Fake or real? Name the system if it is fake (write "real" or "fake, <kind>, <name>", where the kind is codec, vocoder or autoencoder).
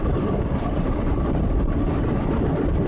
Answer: real